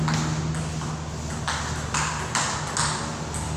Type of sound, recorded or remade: recorded